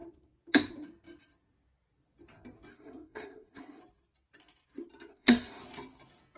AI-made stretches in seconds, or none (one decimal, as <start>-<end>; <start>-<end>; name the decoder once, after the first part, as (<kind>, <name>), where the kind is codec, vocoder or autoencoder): 2.7-3.8 (codec, SNAC); 5.1-5.6